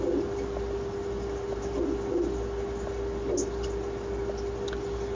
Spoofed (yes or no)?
no